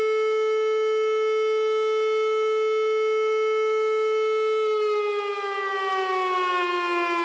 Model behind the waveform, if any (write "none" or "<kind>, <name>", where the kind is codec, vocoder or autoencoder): none